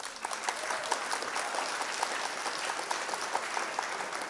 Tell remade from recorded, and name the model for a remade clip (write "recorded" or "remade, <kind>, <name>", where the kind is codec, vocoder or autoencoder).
recorded